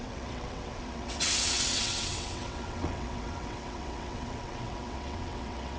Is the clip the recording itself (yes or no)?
no